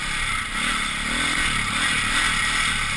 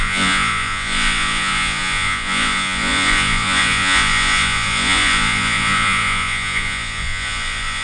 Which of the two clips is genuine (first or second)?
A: first